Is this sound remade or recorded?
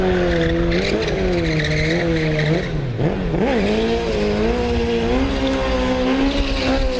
recorded